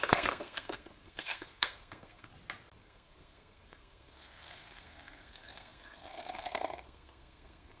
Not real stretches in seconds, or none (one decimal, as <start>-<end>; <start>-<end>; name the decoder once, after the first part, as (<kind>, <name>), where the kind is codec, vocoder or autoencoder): 0.0-2.3 (codec, SNAC); 2.8-7.8

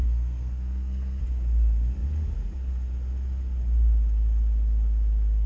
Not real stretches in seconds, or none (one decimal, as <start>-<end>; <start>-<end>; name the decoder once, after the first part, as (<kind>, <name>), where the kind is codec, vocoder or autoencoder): 0.0-1.2 (codec, SNAC)

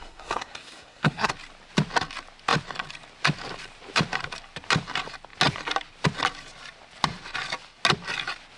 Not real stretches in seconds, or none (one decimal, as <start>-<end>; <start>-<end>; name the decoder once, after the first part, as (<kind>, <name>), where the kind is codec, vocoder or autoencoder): 0.0-1.3 (codec, SNAC)